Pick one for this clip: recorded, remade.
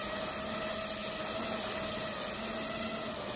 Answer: recorded